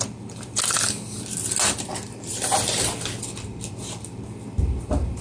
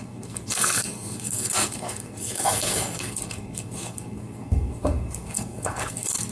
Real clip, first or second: first